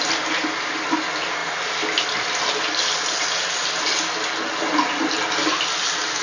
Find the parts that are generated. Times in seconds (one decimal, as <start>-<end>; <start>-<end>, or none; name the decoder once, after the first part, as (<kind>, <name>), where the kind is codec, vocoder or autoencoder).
none